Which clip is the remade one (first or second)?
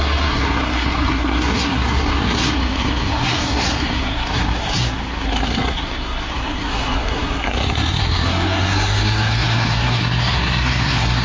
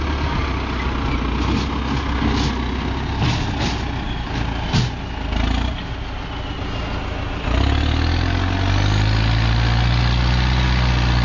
first